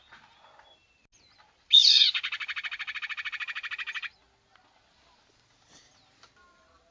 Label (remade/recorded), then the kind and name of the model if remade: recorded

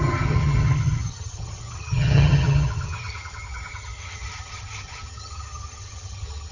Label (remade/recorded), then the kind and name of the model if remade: remade, vocoder, HiFi-GAN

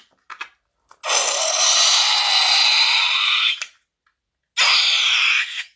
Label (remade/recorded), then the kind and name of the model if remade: recorded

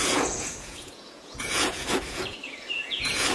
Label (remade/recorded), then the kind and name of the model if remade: remade, vocoder, Vocos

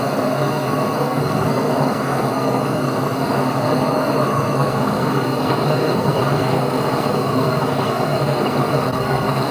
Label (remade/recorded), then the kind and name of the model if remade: remade, codec, SNAC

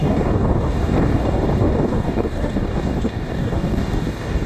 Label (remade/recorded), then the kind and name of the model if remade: remade, codec, DAC